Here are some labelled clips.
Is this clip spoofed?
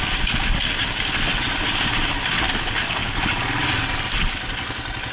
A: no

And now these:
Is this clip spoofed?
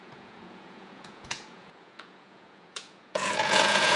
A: yes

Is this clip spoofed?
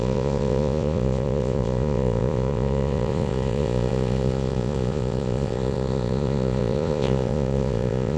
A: yes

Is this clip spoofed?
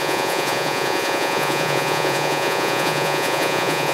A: yes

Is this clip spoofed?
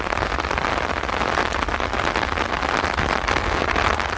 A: no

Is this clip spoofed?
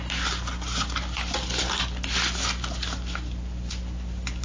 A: no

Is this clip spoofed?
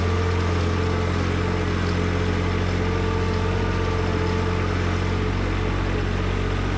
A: no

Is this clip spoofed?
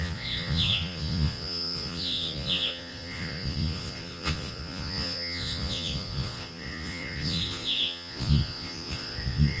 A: yes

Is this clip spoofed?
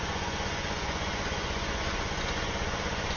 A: yes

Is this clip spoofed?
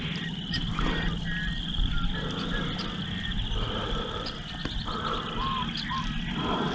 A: no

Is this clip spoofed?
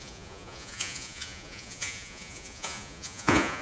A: yes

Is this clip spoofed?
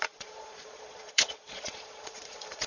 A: yes